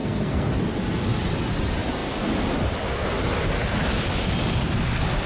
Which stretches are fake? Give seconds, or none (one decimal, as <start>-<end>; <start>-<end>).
0.0-0.5

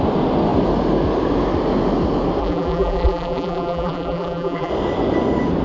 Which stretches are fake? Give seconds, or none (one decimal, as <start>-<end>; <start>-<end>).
2.4-4.7

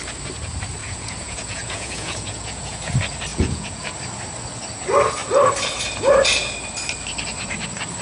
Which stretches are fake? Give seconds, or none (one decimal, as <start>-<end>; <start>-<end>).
0.8-2.9; 3.3-3.9

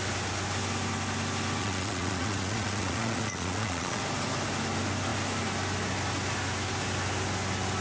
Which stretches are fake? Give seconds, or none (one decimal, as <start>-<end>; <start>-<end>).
1.6-4.0

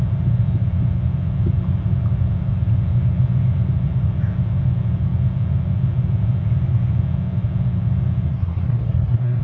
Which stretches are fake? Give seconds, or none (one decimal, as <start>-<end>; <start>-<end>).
8.3-9.4

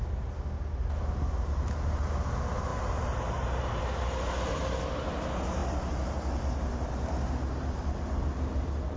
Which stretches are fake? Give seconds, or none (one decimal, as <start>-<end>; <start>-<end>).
2.7-3.8